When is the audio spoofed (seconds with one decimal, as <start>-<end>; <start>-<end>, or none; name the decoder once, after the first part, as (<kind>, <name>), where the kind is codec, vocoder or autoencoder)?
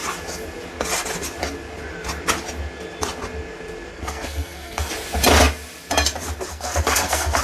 3.9-4.9 (codec, SNAC); 6.5-7.4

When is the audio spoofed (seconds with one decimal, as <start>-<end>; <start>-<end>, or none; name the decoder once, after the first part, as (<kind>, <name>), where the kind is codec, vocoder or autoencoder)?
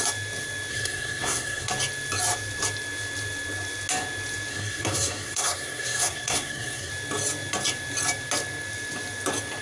0.7-1.7 (codec, SNAC); 4.5-6.9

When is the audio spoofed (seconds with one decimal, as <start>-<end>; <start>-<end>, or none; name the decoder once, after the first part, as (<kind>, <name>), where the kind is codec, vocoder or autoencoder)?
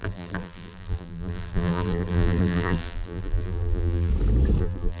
0.0-4.1 (vocoder, BigVGAN v2); 4.6-5.0